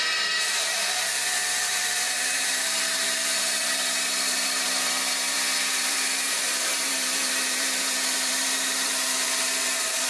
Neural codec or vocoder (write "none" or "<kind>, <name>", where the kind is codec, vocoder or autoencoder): vocoder, BigVGAN v2